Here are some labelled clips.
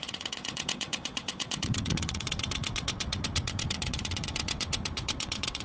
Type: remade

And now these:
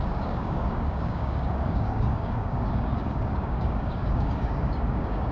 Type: remade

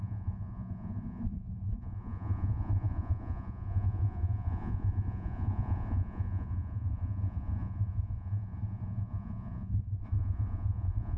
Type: remade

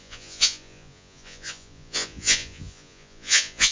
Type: remade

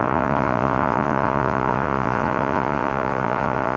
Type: remade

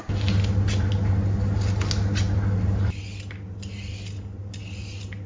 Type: recorded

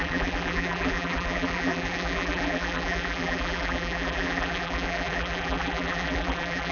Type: remade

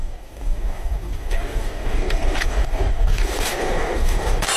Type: remade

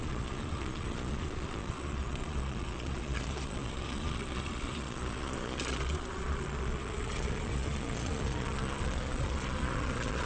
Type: remade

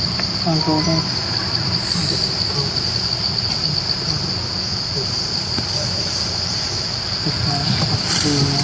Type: recorded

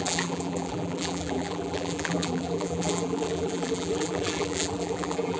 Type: remade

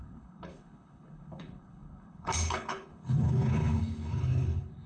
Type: remade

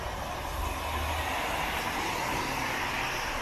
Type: recorded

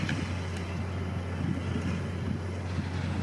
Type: recorded